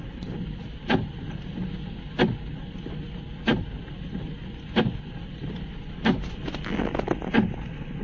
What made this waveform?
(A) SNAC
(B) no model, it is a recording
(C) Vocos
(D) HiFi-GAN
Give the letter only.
B